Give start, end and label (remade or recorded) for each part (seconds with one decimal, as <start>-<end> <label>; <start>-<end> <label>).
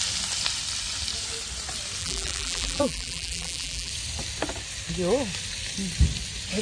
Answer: 0.0-2.0 recorded; 2.0-3.9 remade; 3.9-6.6 recorded